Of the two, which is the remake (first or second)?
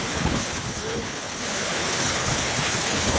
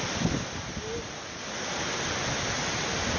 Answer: first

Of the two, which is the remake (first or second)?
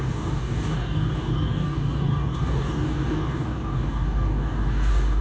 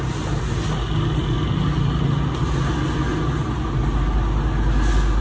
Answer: first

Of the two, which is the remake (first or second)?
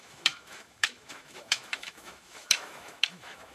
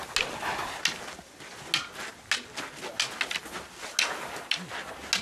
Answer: first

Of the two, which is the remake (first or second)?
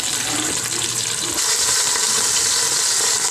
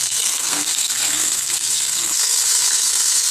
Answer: second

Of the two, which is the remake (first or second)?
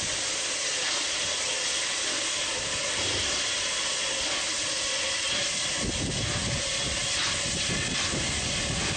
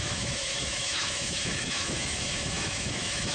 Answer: second